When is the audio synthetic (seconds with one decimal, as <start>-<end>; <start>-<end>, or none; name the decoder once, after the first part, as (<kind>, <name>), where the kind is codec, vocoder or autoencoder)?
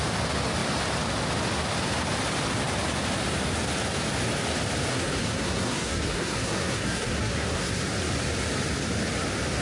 4.9-7.8 (codec, SNAC)